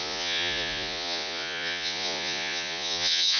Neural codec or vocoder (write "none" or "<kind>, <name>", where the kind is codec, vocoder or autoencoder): vocoder, Vocos